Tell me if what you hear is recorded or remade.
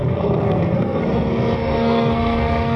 remade